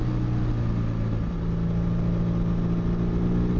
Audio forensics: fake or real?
real